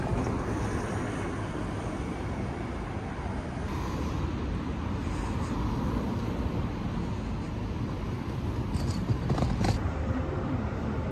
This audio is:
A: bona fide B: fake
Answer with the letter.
A